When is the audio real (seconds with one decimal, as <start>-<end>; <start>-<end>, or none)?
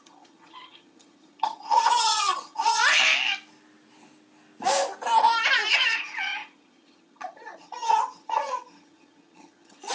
2.8-5.7